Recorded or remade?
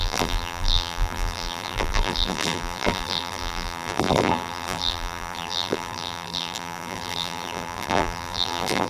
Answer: remade